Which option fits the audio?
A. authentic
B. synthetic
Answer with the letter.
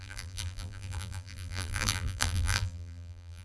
B